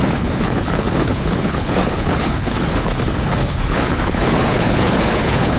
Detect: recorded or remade remade